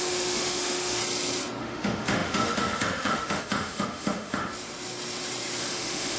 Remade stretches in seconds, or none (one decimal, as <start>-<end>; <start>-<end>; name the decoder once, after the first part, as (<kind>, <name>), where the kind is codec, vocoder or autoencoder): 0.0-1.0 (autoencoder, DAC-VAE); 1.6-4.4; 5.6-6.2